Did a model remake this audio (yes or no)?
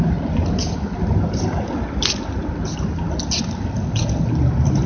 no